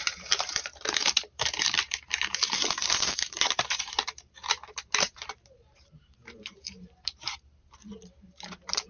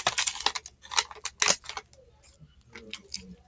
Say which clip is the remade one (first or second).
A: first